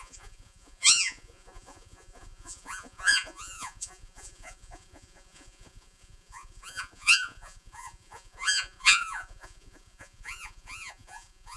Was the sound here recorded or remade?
remade